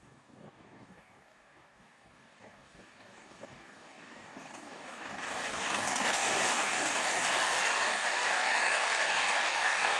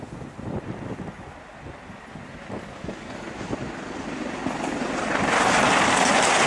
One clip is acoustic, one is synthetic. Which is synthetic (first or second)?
first